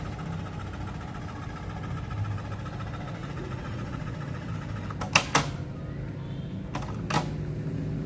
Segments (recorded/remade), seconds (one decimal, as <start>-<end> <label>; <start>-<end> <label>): 0.0-3.2 recorded; 3.2-4.5 remade; 4.5-8.1 recorded